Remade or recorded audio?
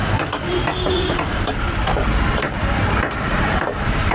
remade